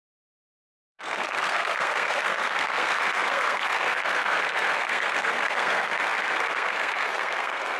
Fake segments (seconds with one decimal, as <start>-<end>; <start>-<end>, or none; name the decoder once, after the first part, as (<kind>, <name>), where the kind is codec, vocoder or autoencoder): 0.0-7.8 (codec, SNAC)